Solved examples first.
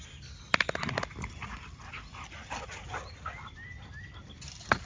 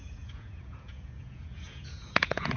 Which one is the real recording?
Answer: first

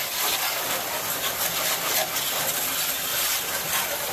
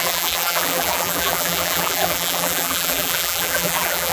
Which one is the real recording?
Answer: first